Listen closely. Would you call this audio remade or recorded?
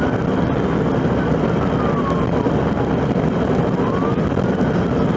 recorded